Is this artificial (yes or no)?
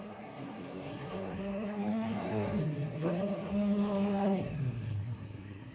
yes